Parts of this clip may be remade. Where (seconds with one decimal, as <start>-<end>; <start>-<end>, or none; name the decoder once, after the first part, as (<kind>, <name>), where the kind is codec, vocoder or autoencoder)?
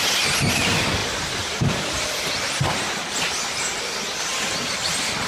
1.0-3.4 (vocoder, BigVGAN v2); 4.3-5.3